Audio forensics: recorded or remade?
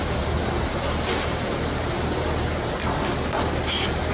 recorded